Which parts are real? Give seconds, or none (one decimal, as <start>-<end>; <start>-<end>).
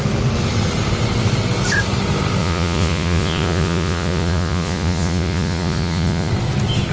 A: 0.0-2.4; 6.3-6.9